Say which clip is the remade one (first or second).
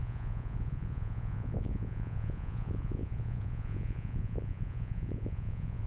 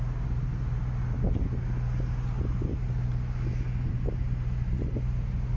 first